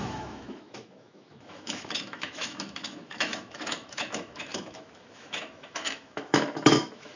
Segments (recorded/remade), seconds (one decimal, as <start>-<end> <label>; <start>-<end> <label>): 0.0-7.2 remade